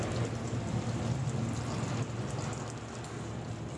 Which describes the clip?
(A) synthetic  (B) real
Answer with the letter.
B